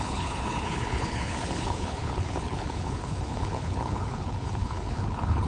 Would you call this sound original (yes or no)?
no